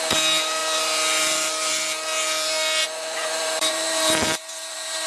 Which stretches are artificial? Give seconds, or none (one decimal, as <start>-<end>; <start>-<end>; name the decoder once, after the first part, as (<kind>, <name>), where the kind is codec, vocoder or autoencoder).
0.0-5.1 (vocoder, BigVGAN v2)